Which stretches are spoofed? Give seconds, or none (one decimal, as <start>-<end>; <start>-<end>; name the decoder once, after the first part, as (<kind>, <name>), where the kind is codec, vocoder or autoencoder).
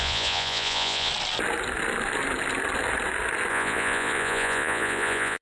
0.0-1.1 (vocoder, Vocos); 3.5-5.4